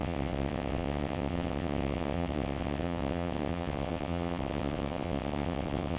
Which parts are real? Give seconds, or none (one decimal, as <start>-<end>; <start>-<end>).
none